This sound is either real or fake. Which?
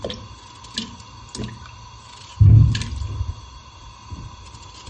real